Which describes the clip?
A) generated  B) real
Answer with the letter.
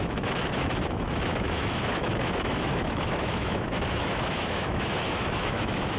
A